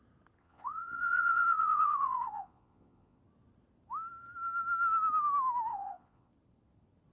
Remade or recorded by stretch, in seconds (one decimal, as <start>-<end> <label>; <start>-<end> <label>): 0.0-0.4 recorded; 0.4-3.2 remade; 3.2-5.7 recorded; 5.7-6.3 remade; 6.3-7.1 recorded